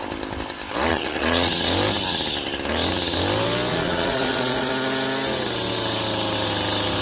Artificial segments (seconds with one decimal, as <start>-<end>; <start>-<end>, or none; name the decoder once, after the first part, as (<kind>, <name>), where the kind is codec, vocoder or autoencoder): 0.9-1.5 (vocoder, Vocos); 3.7-4.7